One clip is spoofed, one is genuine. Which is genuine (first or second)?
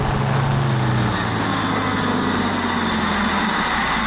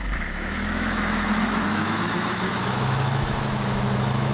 first